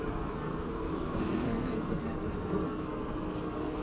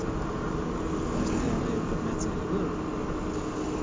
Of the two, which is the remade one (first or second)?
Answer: first